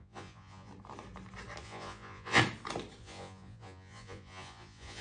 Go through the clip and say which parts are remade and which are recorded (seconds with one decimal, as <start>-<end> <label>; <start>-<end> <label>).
0.0-0.7 remade; 0.7-1.6 recorded; 1.6-2.4 remade; 2.4-3.0 recorded; 3.0-5.0 remade